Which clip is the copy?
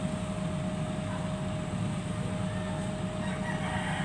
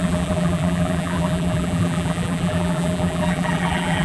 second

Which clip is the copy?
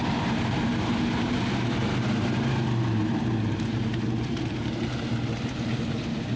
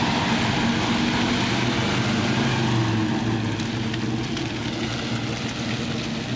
first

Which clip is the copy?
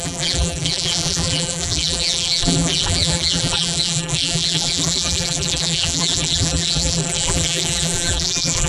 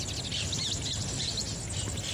first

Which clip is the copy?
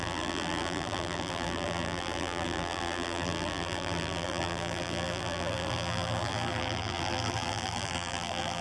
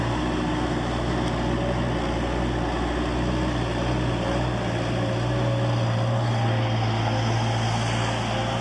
first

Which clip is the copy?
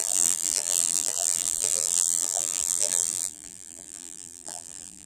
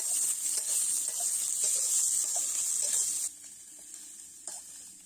first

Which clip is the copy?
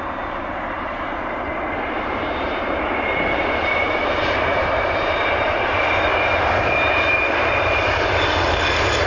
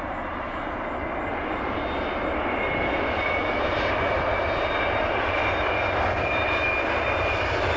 first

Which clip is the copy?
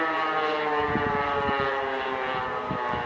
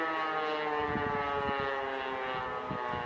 first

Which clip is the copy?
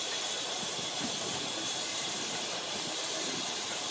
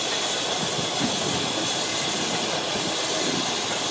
first